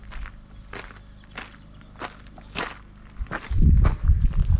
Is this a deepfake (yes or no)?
no